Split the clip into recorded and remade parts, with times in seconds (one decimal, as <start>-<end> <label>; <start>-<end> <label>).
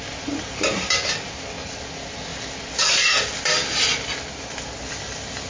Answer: 0.0-5.5 recorded